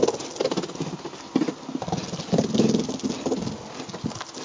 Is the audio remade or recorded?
recorded